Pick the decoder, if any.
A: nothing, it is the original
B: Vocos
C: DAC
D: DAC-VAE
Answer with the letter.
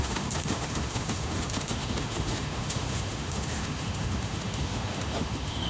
D